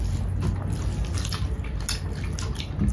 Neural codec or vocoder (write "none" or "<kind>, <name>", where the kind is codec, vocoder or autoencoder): none